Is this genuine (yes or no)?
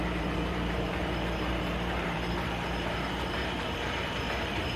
no